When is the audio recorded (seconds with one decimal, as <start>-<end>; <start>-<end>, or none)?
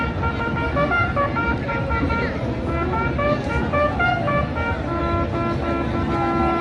0.0-1.0; 2.1-6.6